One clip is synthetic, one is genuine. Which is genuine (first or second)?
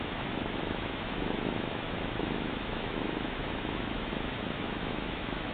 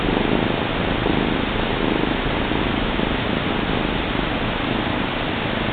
second